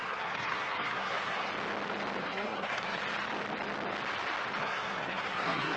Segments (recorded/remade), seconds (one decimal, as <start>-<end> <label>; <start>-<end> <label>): 0.0-1.5 remade; 1.5-2.2 recorded; 2.2-3.0 remade; 3.0-4.6 recorded; 4.6-5.8 remade